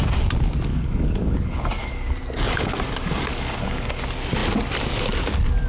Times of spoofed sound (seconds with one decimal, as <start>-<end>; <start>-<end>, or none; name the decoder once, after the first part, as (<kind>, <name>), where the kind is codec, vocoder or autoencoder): 0.7-4.0 (codec, DAC)